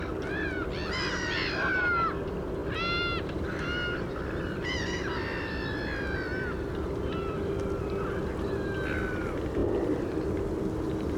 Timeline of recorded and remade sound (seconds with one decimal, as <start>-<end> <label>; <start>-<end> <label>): 0.0-9.6 recorded; 9.6-10.3 remade; 10.3-11.2 recorded